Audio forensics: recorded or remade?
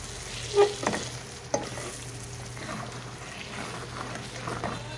recorded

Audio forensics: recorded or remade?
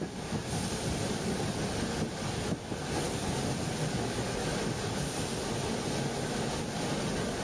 recorded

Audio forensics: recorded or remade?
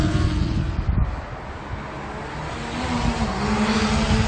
recorded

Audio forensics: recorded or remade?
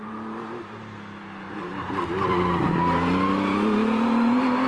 remade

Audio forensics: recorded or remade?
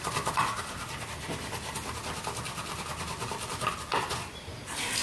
recorded